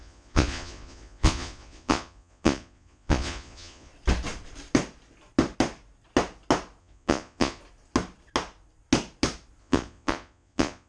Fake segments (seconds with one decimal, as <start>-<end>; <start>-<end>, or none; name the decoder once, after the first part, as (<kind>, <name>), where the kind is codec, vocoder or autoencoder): 0.0-3.9 (vocoder, Vocos); 6.8-7.6; 9.6-10.9